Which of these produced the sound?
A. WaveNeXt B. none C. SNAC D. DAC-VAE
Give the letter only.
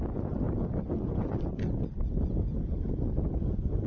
B